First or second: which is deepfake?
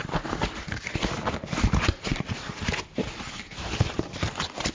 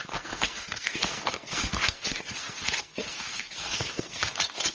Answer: second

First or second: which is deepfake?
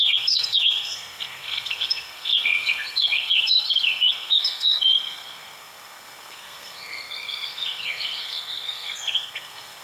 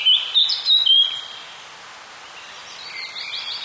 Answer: first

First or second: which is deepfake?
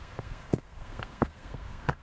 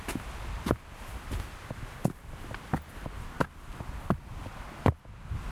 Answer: first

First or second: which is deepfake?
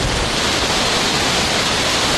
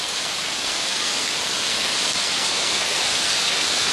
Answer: second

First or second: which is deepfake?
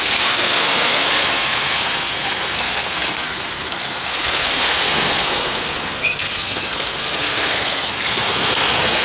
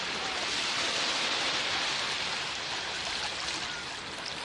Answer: first